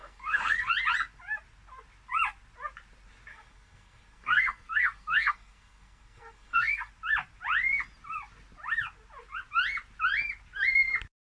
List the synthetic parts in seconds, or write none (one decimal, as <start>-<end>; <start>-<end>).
0.0-0.7; 3.3-6.9